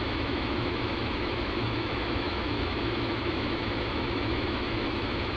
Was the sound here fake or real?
fake